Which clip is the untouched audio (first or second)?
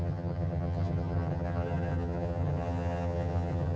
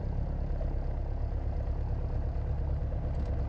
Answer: second